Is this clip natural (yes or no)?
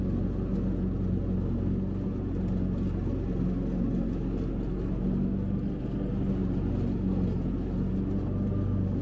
yes